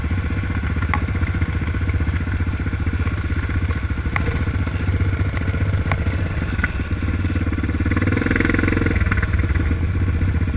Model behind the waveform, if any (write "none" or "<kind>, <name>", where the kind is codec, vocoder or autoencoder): none